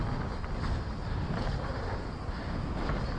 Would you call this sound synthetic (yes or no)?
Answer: no